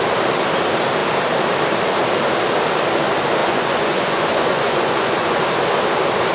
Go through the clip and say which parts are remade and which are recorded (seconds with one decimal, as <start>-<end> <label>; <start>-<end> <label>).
0.0-3.4 recorded; 3.4-5.4 remade; 5.4-6.3 recorded